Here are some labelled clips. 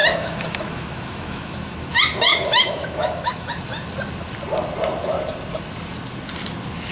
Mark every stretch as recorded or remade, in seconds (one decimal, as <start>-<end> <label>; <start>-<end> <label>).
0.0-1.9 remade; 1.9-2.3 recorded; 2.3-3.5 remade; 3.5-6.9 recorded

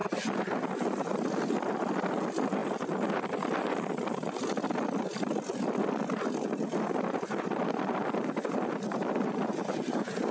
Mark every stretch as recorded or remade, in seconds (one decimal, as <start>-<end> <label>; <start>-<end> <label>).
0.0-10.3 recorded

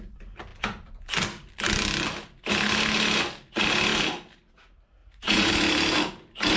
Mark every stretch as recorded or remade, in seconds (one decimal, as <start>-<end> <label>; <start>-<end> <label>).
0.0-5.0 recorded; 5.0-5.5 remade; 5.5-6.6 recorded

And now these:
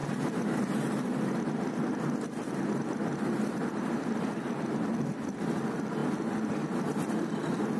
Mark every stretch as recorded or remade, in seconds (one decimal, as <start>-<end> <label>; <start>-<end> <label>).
0.0-7.8 recorded

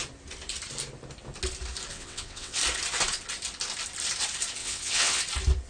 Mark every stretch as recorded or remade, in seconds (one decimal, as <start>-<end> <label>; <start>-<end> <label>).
0.0-1.9 recorded; 1.9-2.6 remade; 2.6-4.6 recorded; 4.6-5.2 remade; 5.2-5.7 recorded